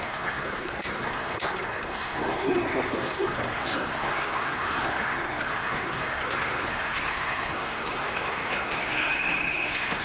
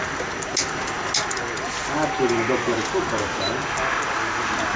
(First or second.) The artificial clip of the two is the first